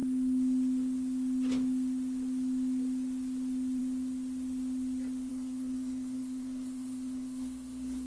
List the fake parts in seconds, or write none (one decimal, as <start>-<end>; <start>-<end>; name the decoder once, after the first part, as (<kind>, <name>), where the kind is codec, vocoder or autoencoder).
5.3-8.1 (codec, SNAC)